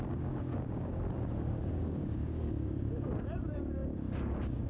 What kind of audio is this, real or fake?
fake